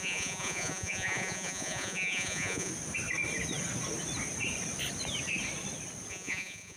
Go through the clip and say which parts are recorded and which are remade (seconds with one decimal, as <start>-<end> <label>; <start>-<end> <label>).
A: 0.0-2.7 remade; 2.7-6.1 recorded; 6.1-6.8 remade